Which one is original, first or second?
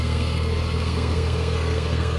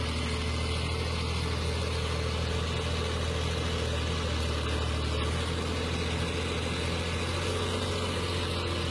second